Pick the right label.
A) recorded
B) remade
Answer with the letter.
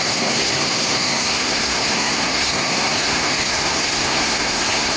B